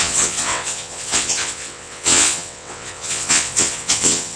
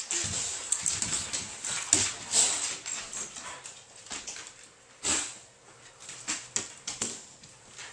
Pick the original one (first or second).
second